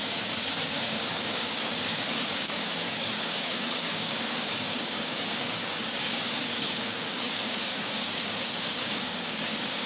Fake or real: fake